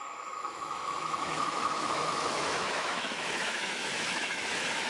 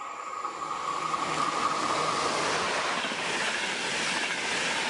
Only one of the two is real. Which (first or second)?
second